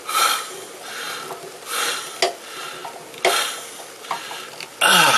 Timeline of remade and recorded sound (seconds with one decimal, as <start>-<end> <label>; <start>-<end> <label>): 0.0-5.2 recorded